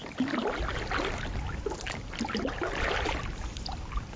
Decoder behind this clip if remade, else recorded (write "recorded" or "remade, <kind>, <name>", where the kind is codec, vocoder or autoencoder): recorded